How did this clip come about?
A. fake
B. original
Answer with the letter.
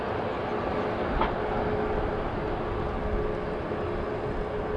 B